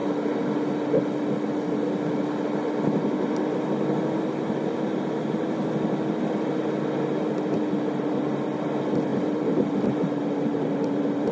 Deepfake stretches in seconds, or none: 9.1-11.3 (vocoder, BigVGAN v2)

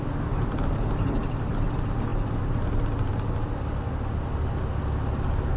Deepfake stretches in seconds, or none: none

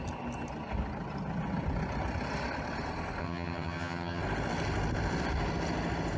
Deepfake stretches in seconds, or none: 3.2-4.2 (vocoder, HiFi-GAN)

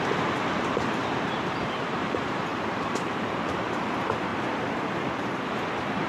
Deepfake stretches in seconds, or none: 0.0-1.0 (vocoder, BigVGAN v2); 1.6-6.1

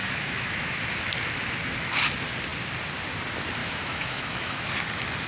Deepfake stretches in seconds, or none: 0.0-0.7 (autoencoder, DAC-VAE); 3.6-4.7

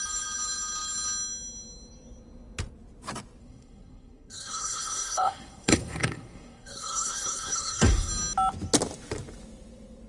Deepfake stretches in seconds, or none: 3.4-8.1 (codec, SNAC)

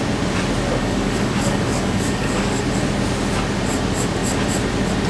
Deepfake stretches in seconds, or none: 0.8-2.6 (codec, DAC)

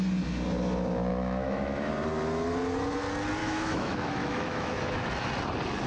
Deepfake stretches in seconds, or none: 1.1-1.9 (autoencoder, DAC-VAE); 3.4-5.1